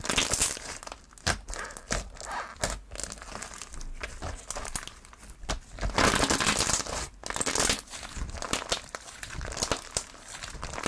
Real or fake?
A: real